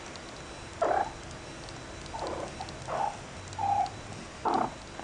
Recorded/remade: recorded